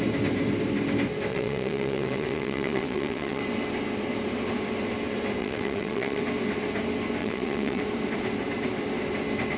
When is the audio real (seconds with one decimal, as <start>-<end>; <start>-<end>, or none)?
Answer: 0.0-1.3; 3.4-5.4; 6.2-7.2; 7.8-9.6